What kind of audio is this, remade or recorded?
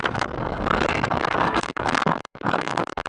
remade